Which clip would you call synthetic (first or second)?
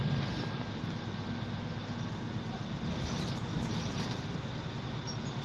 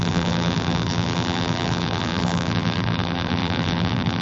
second